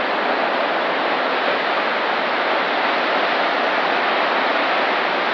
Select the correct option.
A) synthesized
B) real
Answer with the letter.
B